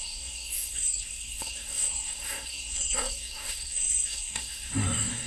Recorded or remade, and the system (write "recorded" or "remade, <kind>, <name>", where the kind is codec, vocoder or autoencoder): remade, codec, SNAC